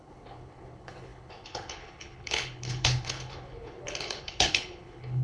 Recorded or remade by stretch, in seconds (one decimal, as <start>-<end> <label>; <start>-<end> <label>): 0.0-5.2 remade